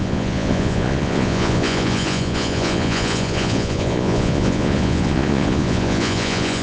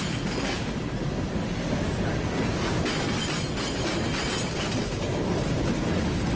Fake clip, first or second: first